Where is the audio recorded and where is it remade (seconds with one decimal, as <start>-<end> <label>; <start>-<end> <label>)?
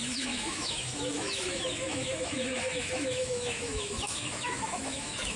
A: 0.0-5.4 remade